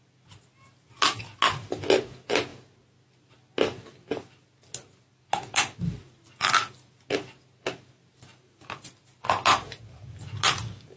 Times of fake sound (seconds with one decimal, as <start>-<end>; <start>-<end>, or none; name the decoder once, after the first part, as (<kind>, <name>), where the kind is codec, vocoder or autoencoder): none